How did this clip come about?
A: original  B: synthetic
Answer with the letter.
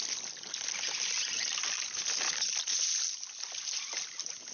A